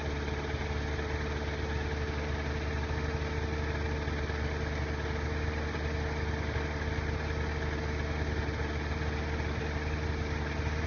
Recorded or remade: recorded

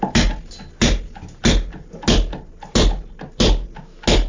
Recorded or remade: recorded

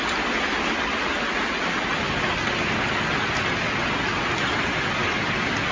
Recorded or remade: recorded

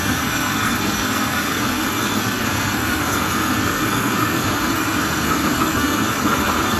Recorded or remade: remade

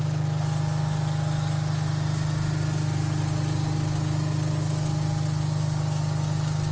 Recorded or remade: recorded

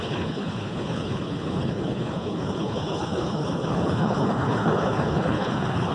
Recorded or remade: remade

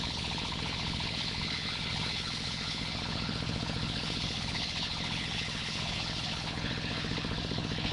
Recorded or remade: remade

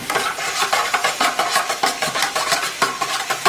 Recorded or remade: recorded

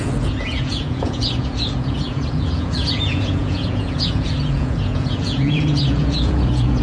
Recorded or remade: remade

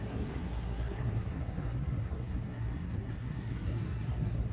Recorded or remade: remade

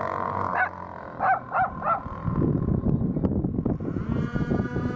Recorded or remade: recorded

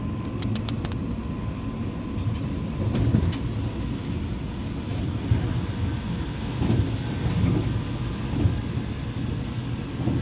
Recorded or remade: recorded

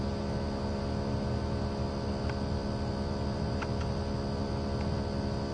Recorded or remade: recorded